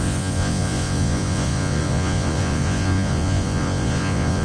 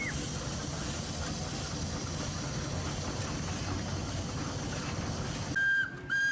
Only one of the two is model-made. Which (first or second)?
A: first